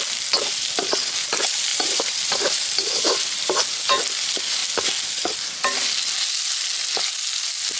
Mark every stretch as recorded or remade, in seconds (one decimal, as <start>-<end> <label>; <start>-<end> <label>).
0.0-1.7 recorded; 1.7-4.0 remade; 4.0-7.8 recorded